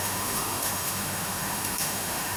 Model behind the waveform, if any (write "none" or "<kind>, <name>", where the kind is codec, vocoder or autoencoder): autoencoder, DAC-VAE